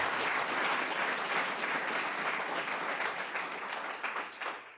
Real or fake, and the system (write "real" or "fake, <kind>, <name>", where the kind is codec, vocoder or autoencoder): real